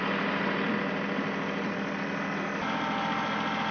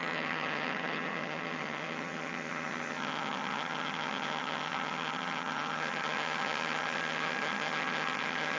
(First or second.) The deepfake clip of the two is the second